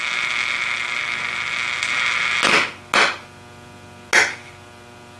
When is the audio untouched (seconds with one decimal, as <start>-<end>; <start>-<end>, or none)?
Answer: 0.0-5.2